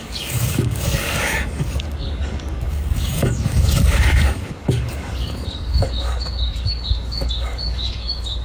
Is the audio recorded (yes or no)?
no